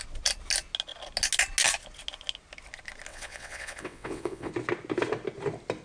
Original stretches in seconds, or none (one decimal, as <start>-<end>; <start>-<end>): 0.0-3.1; 4.5-5.8